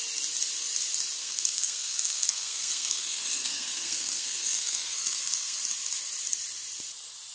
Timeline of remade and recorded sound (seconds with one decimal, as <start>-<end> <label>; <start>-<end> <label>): 0.0-1.2 recorded; 1.2-5.6 remade; 5.6-7.3 recorded